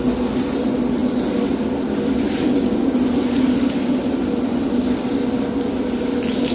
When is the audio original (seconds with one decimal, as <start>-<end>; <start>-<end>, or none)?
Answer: 0.0-6.5